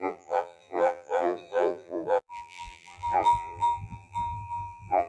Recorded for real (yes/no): no